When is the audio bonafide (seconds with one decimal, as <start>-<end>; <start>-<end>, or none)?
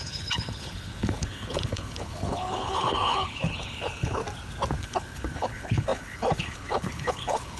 4.2-4.8